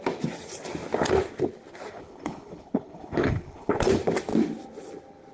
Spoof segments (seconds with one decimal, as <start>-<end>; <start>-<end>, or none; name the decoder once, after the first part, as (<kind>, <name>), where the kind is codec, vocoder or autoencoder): 1.9-3.7 (codec, HILCodec)